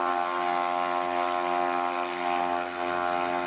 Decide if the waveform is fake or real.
real